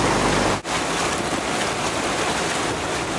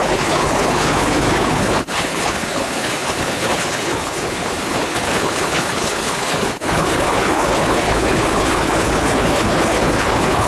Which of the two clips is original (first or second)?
first